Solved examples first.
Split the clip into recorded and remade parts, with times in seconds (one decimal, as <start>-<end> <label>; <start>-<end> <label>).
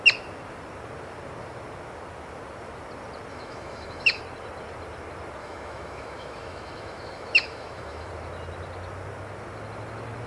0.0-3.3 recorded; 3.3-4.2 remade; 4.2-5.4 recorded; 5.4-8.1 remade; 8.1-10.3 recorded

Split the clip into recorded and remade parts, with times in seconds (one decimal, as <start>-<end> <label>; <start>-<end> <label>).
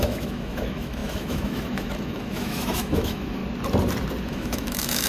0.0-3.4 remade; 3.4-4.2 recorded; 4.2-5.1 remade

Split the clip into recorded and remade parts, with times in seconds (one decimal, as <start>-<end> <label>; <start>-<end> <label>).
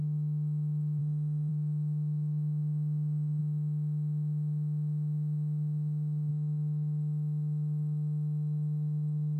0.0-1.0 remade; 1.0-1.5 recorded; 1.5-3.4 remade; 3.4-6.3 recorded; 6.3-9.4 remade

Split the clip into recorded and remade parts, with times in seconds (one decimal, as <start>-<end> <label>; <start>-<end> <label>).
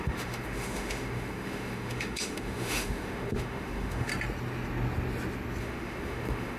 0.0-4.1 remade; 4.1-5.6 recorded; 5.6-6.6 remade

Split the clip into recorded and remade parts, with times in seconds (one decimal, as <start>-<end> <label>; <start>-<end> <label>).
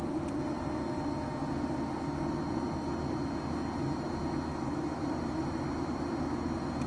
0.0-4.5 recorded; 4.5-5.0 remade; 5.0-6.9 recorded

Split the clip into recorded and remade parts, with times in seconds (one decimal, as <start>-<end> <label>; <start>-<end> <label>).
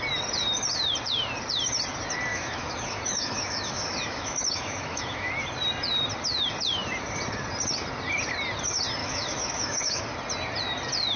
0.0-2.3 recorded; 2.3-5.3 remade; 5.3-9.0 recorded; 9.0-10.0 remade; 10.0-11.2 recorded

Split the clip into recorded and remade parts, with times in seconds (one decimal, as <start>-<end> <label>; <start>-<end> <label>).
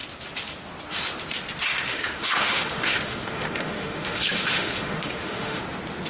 0.0-1.9 recorded; 1.9-5.6 remade; 5.6-6.1 recorded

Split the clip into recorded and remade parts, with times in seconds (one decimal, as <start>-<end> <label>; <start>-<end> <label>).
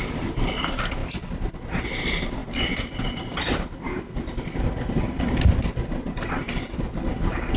0.0-7.6 recorded